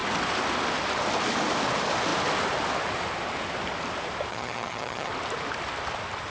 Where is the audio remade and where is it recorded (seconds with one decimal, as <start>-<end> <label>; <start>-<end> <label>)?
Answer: 0.0-4.3 recorded; 4.3-5.1 remade; 5.1-6.3 recorded